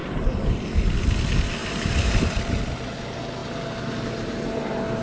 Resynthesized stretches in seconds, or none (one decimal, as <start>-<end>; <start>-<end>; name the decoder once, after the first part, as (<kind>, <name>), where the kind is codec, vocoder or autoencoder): 0.0-0.6 (vocoder, BigVGAN v2); 1.6-2.3; 3.4-4.3